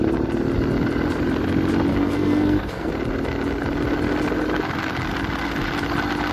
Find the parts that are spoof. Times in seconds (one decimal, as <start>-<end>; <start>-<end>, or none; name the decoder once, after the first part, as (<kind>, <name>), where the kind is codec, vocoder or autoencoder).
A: 1.9-2.9 (codec, SNAC)